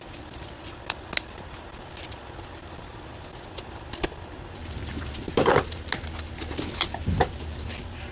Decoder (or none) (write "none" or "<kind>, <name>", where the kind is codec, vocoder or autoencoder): none